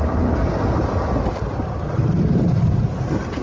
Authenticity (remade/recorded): recorded